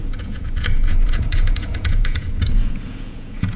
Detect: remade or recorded remade